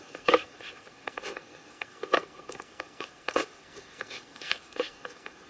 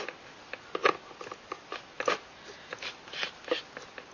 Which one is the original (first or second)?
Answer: second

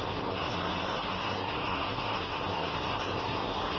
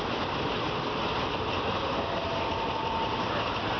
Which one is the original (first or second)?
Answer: second